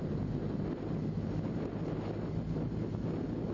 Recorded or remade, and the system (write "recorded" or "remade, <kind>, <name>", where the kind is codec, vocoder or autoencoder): recorded